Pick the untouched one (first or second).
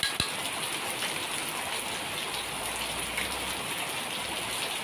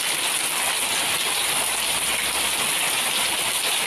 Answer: first